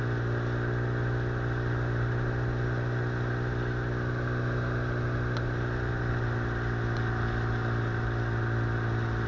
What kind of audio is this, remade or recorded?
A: recorded